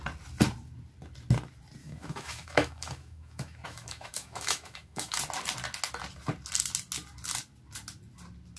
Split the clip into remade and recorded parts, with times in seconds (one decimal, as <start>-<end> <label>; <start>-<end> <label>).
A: 0.0-1.8 recorded; 1.8-5.2 remade; 5.2-8.6 recorded